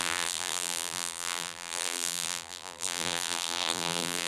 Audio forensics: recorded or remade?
remade